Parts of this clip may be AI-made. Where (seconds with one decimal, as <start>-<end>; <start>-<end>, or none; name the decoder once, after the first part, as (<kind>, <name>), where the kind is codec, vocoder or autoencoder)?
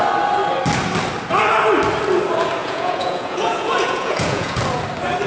2.6-4.6 (vocoder, Vocos)